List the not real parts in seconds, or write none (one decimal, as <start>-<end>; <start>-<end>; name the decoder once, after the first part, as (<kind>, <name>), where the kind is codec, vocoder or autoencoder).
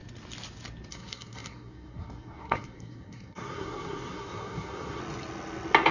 0.9-5.0 (codec, SNAC)